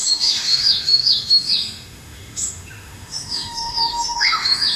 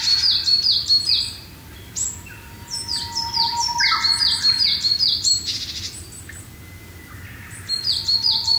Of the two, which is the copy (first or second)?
first